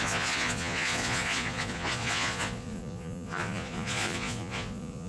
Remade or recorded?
remade